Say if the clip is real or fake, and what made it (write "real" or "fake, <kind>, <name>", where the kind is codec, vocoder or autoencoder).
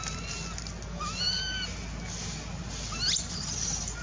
real